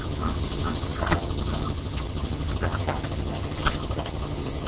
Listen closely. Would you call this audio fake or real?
fake